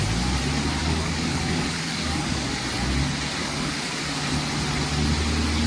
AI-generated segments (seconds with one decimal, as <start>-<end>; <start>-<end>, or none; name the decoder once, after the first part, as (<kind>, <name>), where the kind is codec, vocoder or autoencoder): 0.8-2.6 (codec, DAC); 3.4-4.3